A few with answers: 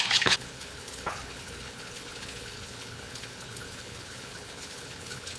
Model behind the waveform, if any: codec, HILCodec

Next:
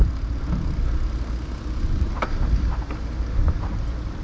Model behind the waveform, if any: none